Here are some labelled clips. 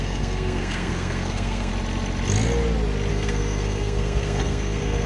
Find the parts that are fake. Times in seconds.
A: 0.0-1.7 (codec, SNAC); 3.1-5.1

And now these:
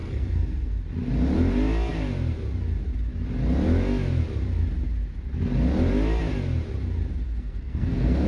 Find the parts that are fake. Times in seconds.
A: 0.0-0.8 (codec, SNAC); 7.2-8.3

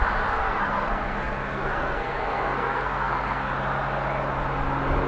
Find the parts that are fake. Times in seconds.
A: 0.4-3.5 (codec, SNAC)

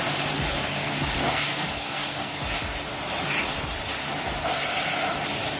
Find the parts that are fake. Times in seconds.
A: 0.8-2.4 (codec, SNAC)

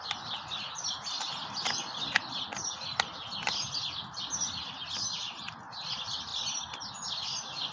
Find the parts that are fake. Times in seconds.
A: none

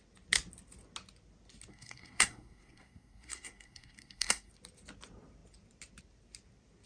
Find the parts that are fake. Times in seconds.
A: 1.7-4.5 (codec, SNAC)

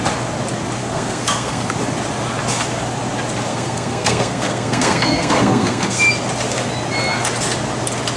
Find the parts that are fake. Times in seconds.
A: 0.8-1.7 (codec, SNAC); 3.5-6.0